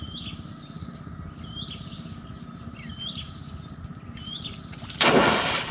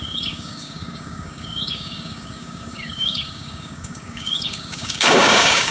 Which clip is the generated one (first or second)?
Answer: second